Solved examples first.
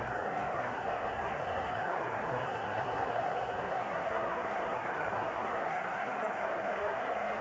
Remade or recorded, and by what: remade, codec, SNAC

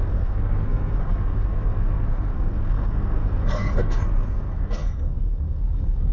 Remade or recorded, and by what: remade, codec, SNAC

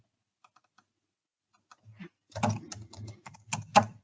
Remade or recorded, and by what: recorded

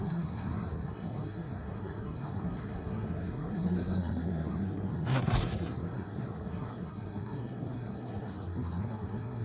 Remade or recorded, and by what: remade, codec, SNAC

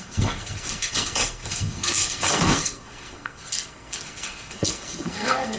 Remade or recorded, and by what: remade, codec, SNAC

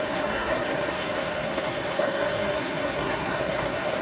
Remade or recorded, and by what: remade, codec, SNAC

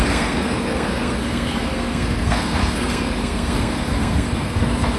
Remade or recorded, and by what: remade, codec, SNAC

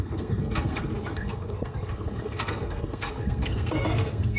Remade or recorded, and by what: remade, codec, SNAC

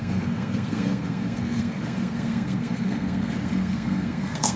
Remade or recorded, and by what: remade, codec, SNAC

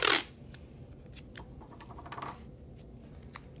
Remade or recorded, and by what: recorded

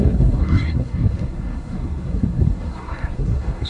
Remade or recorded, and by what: remade, codec, SNAC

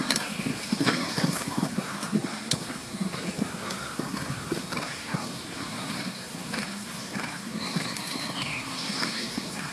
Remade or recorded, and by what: remade, codec, SNAC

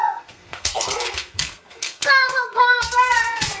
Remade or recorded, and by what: remade, codec, SNAC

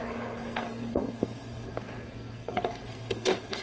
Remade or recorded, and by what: remade, codec, SNAC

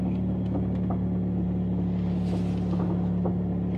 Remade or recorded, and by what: recorded